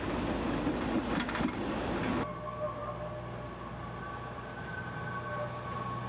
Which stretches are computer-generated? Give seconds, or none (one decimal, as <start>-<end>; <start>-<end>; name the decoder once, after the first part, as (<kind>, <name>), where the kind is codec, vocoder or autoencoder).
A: none